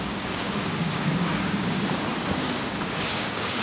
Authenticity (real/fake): fake